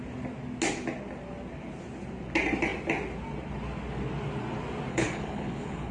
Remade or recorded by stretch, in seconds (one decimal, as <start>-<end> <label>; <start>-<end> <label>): 0.0-4.9 recorded; 4.9-5.9 remade